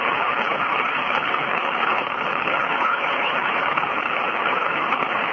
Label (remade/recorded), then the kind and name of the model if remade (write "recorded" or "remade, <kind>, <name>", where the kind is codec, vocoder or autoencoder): remade, codec, HILCodec